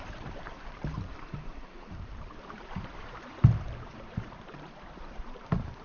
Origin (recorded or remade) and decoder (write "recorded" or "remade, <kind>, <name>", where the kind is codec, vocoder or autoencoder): remade, vocoder, BigVGAN v2